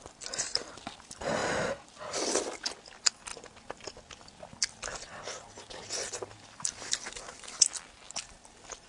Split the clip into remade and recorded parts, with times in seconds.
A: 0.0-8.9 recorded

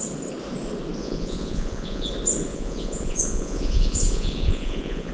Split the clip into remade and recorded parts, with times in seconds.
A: 0.0-1.0 recorded; 1.0-2.1 remade; 2.1-2.5 recorded; 2.5-5.1 remade